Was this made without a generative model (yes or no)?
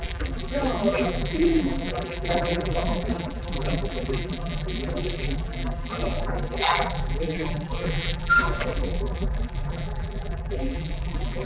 no